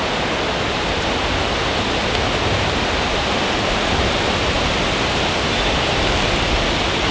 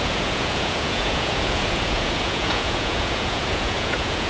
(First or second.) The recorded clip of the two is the first